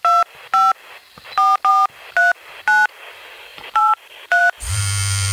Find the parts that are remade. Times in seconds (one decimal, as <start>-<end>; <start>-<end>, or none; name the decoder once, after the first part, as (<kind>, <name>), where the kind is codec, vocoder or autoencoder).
3.5-4.8 (vocoder, BigVGAN v2)